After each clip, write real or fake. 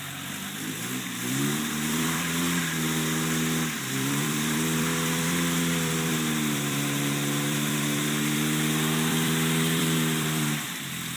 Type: fake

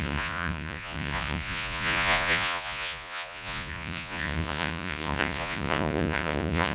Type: fake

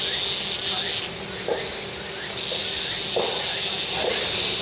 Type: real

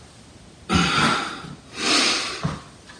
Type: real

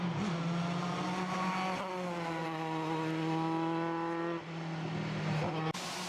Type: real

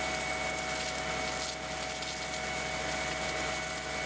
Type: real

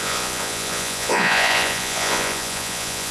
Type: fake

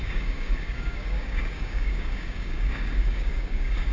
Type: fake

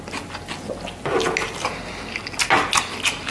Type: real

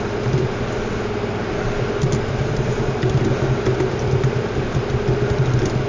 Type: real